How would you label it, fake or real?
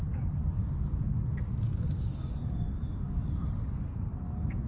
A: real